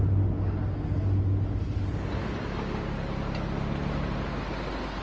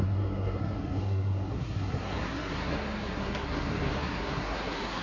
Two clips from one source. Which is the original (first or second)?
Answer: first